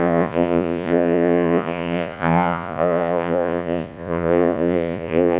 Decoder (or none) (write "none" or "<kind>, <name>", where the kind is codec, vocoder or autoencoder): vocoder, Vocos